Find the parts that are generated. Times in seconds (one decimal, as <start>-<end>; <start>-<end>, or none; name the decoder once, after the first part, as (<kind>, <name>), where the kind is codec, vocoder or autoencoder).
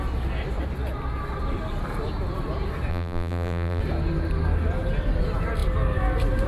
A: 2.9-3.8 (vocoder, BigVGAN v2)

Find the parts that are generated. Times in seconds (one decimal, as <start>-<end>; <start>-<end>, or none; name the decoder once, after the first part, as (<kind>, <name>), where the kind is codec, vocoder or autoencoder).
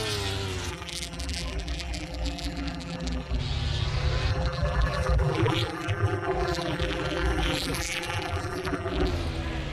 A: 0.7-3.4 (vocoder, BigVGAN v2); 4.3-9.1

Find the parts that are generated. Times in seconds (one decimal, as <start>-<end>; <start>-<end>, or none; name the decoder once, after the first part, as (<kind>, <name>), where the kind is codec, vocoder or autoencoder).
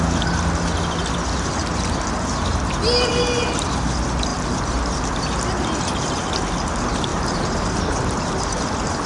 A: 4.3-5.0 (vocoder, BigVGAN v2); 7.1-8.7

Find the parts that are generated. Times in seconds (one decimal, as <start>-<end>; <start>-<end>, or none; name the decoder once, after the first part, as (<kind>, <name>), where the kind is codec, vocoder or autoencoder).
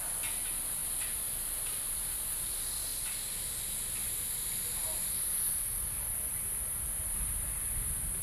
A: 0.8-2.5 (vocoder, BigVGAN v2)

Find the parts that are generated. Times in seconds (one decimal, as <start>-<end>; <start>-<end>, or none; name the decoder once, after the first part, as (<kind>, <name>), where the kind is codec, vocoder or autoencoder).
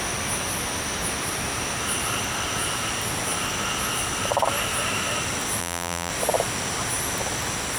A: 5.6-6.1 (vocoder, BigVGAN v2)